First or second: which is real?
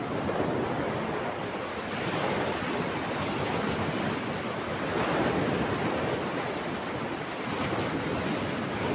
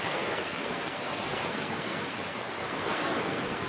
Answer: first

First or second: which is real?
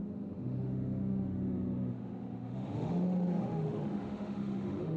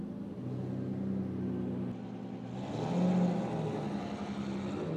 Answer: second